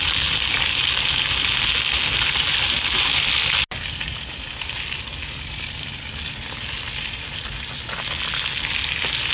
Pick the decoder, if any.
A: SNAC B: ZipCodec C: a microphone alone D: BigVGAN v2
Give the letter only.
C